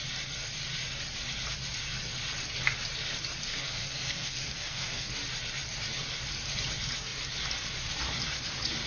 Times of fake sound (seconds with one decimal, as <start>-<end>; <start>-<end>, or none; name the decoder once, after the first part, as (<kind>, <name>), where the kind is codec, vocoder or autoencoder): 3.5-5.1 (codec, SNAC)